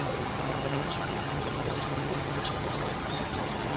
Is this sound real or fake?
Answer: fake